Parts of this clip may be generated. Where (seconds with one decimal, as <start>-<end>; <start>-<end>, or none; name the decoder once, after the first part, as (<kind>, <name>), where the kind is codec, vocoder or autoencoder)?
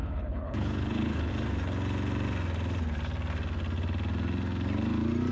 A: 0.0-1.3 (codec, HILCodec)